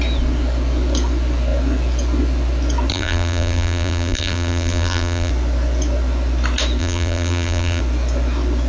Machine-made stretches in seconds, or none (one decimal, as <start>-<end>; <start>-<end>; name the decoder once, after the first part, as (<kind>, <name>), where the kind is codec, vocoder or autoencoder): 2.9-5.3 (vocoder, BigVGAN v2); 6.8-7.8